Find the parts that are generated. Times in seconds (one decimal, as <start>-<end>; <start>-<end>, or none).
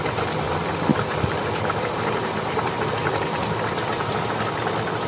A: none